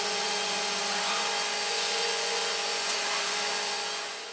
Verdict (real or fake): fake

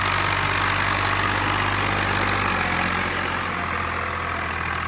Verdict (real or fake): real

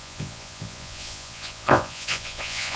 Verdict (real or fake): fake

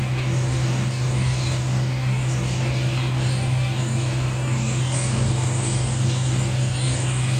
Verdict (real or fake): fake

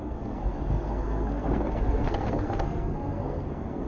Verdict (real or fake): fake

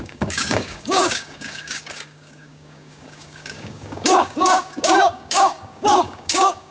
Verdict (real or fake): fake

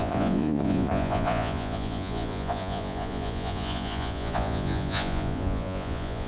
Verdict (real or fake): fake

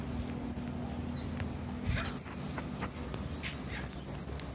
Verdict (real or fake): real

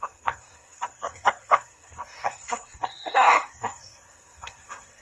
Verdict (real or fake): fake